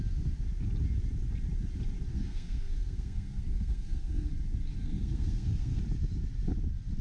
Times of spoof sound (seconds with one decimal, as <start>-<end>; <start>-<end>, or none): 2.1-4.3; 4.8-5.8